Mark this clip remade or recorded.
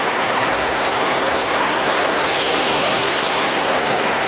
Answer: remade